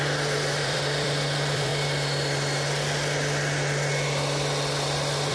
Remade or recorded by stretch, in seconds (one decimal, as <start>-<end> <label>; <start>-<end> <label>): 0.0-1.7 remade; 1.7-5.3 recorded